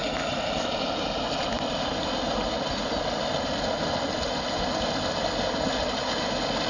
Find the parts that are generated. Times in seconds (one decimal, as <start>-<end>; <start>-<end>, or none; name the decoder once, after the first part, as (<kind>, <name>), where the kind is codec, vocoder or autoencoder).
none